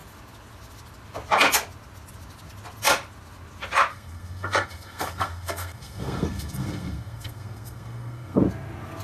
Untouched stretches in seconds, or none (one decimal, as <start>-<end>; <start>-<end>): 0.0-3.9; 8.4-9.0